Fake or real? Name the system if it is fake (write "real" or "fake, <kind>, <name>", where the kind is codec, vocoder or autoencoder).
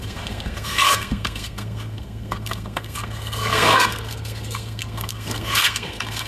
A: fake, codec, SNAC